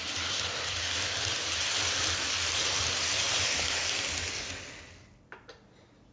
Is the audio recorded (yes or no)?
yes